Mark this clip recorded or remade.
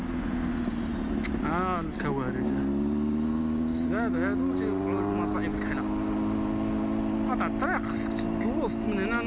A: recorded